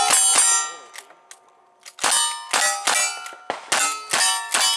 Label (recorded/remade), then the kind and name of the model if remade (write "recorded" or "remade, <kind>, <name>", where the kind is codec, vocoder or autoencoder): recorded